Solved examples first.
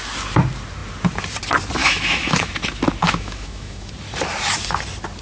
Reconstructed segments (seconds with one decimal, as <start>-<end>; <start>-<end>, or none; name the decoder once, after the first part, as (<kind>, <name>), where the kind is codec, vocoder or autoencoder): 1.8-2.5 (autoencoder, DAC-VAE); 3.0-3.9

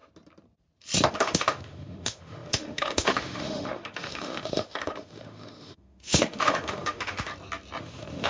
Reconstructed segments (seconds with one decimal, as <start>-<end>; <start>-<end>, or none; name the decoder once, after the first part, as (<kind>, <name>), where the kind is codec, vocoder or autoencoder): 1.1-7.3 (autoencoder, DAC-VAE); 7.8-8.3

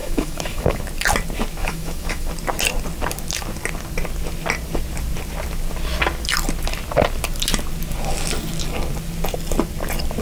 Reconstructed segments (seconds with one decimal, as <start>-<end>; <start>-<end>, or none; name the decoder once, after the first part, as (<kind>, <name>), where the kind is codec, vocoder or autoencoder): 0.0-0.8 (autoencoder, DAC-VAE); 1.6-2.3

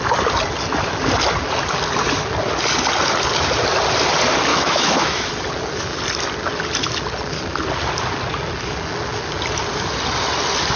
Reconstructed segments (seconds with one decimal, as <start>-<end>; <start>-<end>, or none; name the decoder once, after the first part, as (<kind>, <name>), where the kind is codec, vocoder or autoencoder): 4.5-5.3 (autoencoder, DAC-VAE)